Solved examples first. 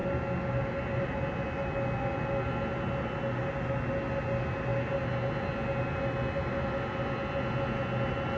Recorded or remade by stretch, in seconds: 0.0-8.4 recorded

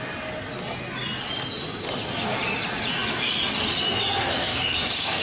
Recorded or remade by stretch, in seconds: 0.0-4.5 recorded; 4.5-5.2 remade